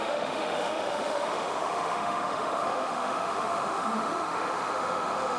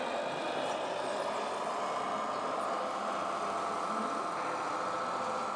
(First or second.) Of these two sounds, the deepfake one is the first